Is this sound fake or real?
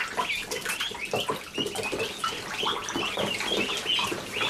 real